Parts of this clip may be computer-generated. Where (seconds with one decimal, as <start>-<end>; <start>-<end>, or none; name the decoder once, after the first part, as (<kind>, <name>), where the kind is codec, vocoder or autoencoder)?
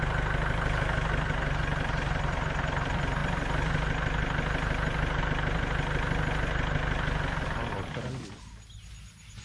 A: none